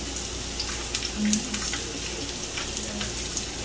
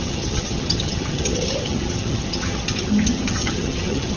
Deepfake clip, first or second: second